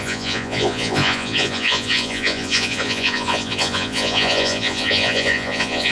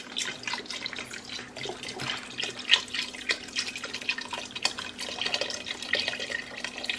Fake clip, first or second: first